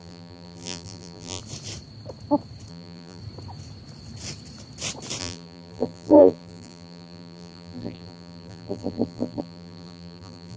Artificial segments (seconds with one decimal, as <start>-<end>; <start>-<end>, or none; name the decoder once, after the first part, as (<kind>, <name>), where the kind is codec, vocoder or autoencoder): 0.0-1.4 (vocoder, BigVGAN v2); 2.7-3.2; 5.2-10.6